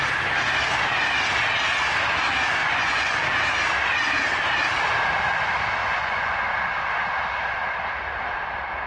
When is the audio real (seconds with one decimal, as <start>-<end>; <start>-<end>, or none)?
0.0-2.6; 3.2-5.8; 6.4-8.9